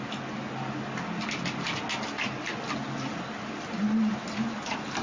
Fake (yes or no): no